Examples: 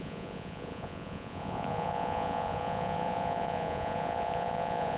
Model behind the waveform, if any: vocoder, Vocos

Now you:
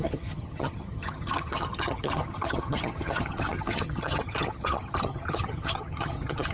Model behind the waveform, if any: vocoder, HiFi-GAN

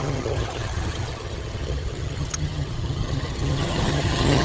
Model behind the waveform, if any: vocoder, HiFi-GAN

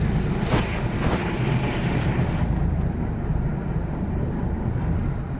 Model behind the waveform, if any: none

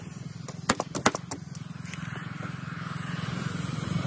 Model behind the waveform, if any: none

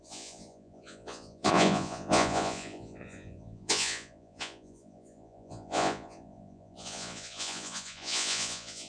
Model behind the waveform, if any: vocoder, Vocos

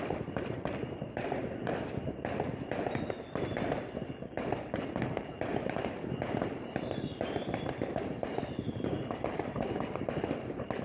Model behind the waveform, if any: vocoder, BigVGAN v2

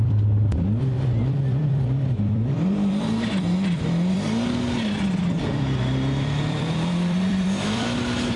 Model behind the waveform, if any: vocoder, BigVGAN v2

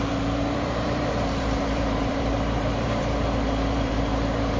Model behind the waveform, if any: vocoder, BigVGAN v2